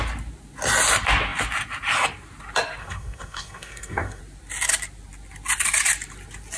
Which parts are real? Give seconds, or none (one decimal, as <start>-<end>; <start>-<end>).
0.0-2.8; 4.2-6.6

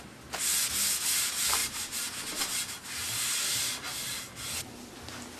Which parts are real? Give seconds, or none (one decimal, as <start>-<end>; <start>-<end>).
0.0-5.4

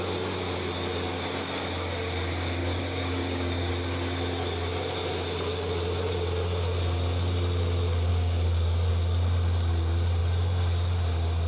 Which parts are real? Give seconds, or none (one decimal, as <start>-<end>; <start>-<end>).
0.0-2.6; 3.7-8.1; 8.9-11.5

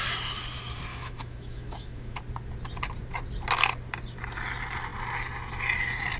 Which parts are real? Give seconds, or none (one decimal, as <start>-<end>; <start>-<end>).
0.0-0.9; 2.2-6.2

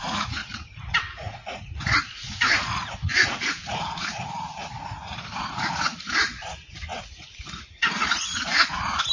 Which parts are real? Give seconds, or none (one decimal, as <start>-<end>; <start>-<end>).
0.4-1.0

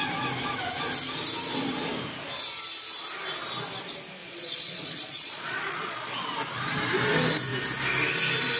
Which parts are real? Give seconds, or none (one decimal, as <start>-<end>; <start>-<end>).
0.0-4.2; 6.1-8.6